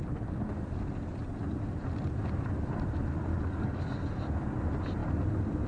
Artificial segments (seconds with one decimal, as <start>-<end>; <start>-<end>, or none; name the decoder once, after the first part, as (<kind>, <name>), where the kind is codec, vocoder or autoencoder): 3.3-3.8 (codec, DAC)